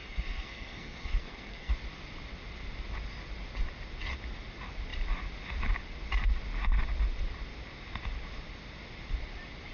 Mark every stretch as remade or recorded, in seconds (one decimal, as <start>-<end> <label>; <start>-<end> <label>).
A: 0.0-1.7 remade; 1.7-9.7 recorded